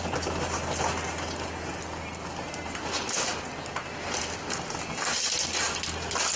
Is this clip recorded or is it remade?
recorded